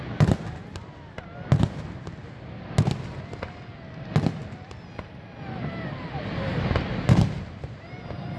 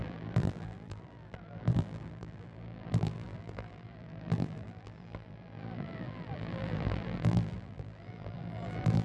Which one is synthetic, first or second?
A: second